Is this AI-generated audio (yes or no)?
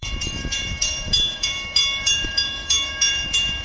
yes